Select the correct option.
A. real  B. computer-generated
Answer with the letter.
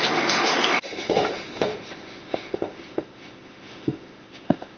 B